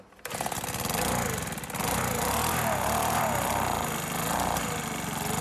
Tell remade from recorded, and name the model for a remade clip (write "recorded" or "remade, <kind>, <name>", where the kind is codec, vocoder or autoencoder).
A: recorded